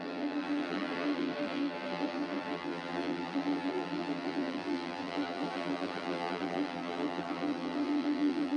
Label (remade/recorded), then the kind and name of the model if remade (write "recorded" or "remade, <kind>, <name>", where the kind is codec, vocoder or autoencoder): remade, vocoder, BigVGAN v2